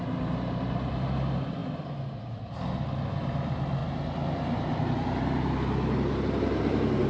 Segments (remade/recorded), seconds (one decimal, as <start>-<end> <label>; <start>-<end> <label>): 0.0-7.1 recorded